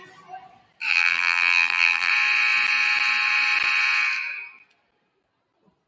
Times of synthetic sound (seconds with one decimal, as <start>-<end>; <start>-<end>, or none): 0.9-2.1